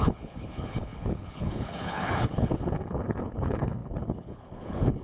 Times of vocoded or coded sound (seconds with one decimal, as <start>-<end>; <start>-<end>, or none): 0.0-5.0